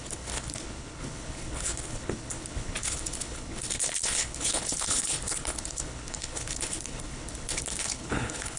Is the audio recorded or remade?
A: remade